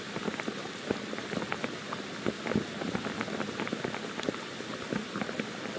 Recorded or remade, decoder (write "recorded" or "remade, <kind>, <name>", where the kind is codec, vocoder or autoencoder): recorded